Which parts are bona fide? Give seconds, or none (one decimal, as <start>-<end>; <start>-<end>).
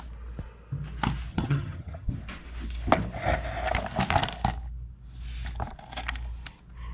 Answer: 0.0-1.3; 2.1-6.9